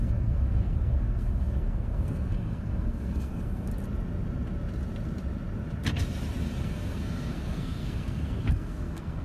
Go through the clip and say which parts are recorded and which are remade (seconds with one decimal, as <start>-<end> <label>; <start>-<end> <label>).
0.0-3.7 remade; 3.7-6.6 recorded; 6.6-9.2 remade